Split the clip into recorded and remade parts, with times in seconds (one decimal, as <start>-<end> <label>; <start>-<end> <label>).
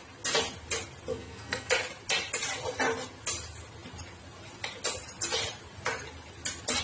0.0-1.1 recorded; 1.1-1.7 remade; 1.7-6.8 recorded